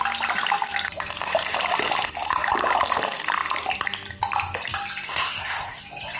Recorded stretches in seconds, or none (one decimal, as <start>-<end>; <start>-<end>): 0.0-5.1; 5.8-6.2